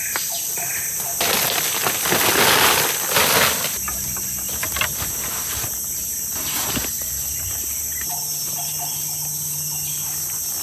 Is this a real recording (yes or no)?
yes